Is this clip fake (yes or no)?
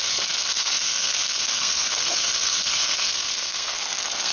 yes